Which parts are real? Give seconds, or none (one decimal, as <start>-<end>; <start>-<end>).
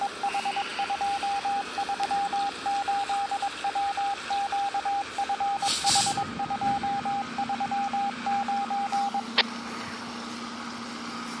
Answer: 0.0-11.4